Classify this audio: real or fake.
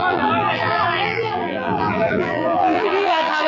fake